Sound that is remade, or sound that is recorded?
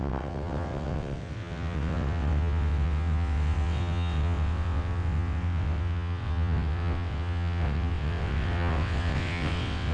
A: remade